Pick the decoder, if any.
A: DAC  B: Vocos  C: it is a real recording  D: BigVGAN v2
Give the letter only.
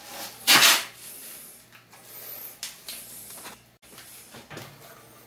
C